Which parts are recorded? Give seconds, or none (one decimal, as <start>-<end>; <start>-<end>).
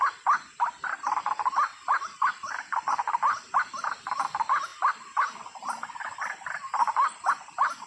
0.0-7.9